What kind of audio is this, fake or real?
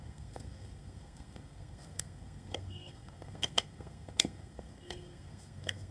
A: fake